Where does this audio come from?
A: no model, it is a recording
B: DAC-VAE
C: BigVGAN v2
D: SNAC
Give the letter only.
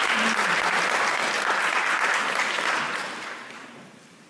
A